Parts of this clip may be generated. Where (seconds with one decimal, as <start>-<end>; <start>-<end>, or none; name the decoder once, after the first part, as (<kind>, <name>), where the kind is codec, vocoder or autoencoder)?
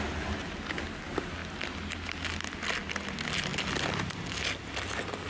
none